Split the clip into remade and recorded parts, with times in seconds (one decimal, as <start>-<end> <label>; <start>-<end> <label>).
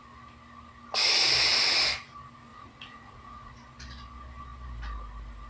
0.0-2.5 recorded; 2.5-3.5 remade; 3.5-5.5 recorded